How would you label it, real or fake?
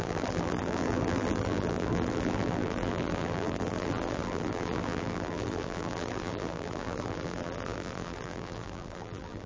fake